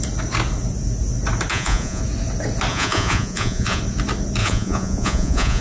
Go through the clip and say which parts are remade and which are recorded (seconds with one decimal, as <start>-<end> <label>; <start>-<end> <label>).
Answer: 0.0-1.5 recorded; 1.5-2.0 remade; 2.0-2.7 recorded; 2.7-3.8 remade; 3.8-4.4 recorded; 4.4-5.6 remade